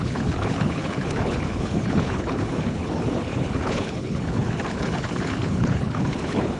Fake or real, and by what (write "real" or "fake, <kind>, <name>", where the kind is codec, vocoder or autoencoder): fake, codec, HILCodec